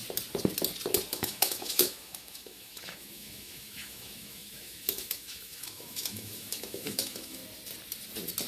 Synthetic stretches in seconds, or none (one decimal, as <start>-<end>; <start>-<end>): 1.1-7.4